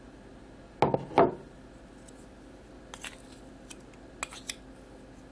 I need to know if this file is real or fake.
real